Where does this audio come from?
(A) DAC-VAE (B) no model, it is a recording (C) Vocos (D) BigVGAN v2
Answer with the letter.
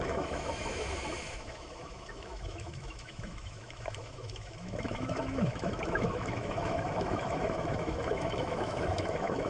A